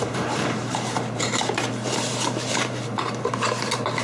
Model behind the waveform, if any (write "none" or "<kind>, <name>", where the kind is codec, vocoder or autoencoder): vocoder, BigVGAN v2